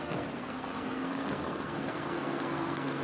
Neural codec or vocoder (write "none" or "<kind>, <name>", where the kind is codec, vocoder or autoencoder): codec, SNAC